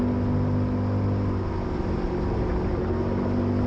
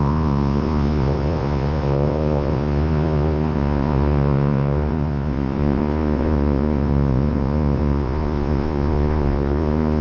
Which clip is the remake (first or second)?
second